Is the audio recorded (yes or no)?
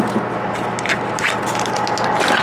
yes